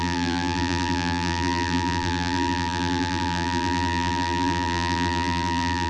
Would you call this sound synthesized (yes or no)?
yes